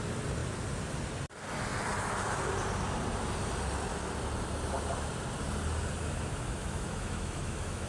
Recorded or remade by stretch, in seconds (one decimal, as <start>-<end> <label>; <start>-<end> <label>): 0.0-6.6 recorded; 6.6-7.9 remade